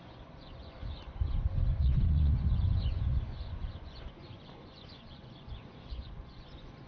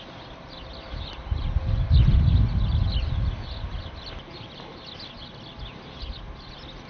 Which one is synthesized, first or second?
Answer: first